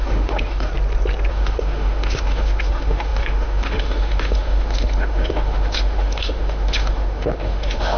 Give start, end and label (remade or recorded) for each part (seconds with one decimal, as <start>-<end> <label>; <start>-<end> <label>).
0.0-0.7 remade; 0.7-1.3 recorded; 1.3-8.0 remade